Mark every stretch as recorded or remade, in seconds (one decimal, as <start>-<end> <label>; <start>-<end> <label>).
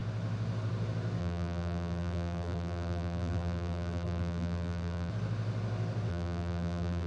0.0-1.2 recorded; 1.2-5.1 remade; 5.1-6.1 recorded; 6.1-7.1 remade